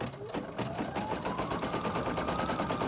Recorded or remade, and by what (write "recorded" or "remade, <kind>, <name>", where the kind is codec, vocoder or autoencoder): recorded